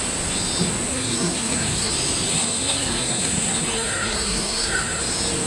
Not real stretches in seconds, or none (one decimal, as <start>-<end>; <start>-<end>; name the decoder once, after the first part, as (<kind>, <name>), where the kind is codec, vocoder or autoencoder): 0.9-1.9 (codec, SNAC); 2.3-5.0